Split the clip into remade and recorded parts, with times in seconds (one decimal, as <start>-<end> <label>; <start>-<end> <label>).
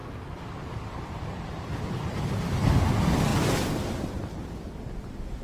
0.0-5.4 recorded